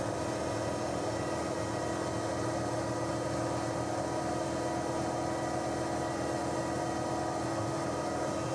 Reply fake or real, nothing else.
real